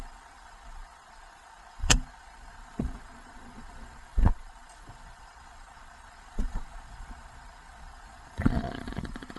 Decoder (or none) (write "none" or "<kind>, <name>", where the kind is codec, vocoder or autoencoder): vocoder, Vocos